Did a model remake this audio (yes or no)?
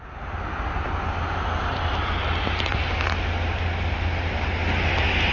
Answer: no